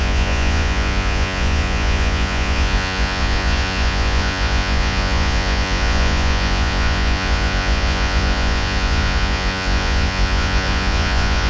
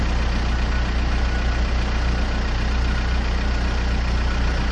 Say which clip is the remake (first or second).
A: first